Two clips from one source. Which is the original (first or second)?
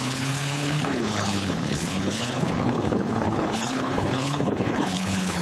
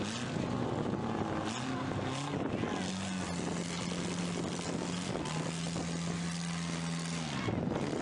second